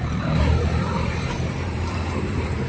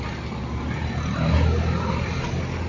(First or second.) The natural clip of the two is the second